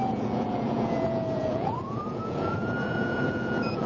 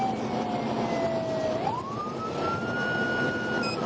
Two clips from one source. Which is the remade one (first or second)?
first